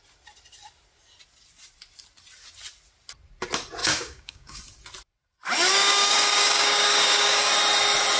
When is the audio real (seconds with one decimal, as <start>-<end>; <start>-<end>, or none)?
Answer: 0.0-3.8; 4.6-5.7; 7.5-8.2